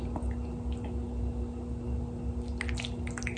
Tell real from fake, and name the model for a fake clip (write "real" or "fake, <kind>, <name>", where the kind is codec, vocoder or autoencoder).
real